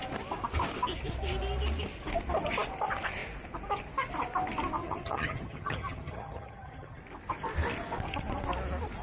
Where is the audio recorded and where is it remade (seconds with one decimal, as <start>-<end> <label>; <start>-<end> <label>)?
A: 0.0-4.8 recorded; 4.8-7.0 remade; 7.0-9.0 recorded